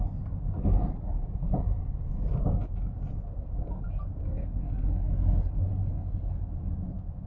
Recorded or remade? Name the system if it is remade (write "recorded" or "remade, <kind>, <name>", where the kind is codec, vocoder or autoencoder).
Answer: recorded